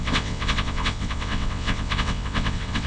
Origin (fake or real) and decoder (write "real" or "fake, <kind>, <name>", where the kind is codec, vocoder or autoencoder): fake, vocoder, WaveNeXt